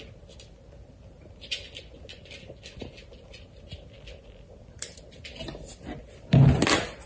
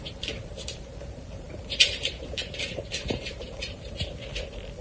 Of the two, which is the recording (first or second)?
first